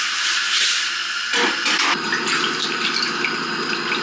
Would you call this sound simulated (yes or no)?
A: no